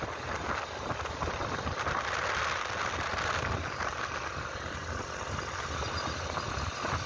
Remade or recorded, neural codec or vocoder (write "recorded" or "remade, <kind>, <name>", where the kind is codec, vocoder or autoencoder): recorded